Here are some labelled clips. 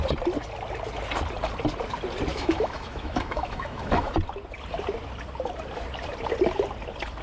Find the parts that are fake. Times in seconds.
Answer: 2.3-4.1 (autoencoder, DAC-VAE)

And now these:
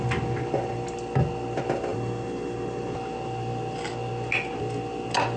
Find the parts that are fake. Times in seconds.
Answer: none